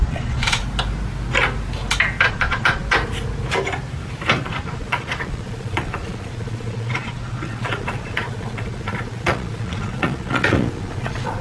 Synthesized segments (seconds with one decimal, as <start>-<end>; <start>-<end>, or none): 0.0-0.6; 2.3-2.8; 4.4-11.4